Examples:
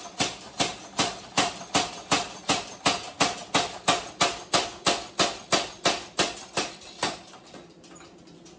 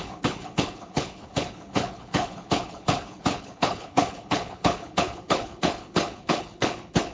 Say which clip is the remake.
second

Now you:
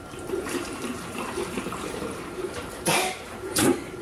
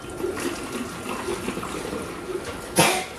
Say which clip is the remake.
first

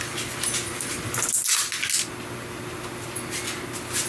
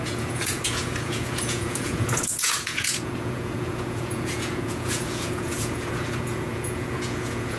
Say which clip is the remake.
second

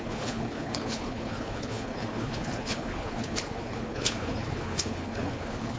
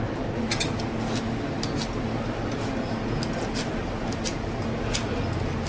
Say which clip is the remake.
first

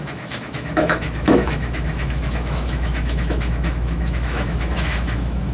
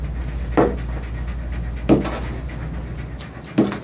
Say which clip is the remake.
first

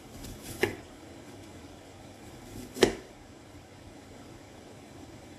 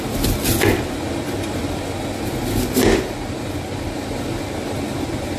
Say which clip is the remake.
first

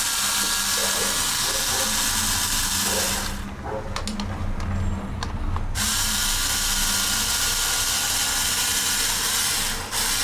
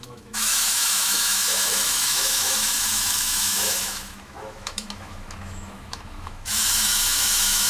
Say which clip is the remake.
second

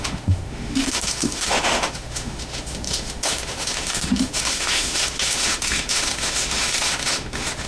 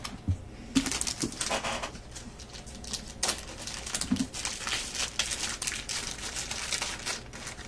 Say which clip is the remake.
first